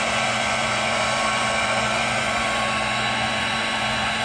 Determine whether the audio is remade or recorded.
remade